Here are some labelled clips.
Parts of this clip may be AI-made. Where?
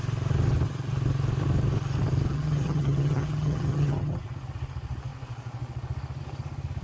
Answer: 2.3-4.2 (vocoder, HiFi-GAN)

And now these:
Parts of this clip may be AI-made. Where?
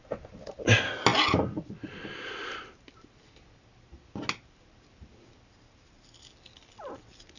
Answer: none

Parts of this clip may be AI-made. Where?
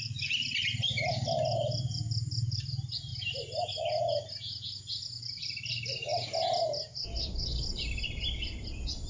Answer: none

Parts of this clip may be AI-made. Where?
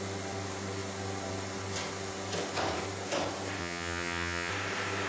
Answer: 3.6-4.5 (vocoder, HiFi-GAN)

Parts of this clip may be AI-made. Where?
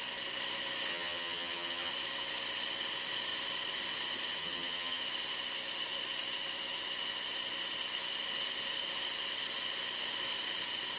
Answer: 0.9-1.9 (vocoder, HiFi-GAN); 4.4-5.0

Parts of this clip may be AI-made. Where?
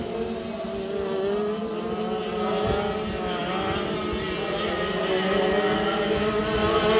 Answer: none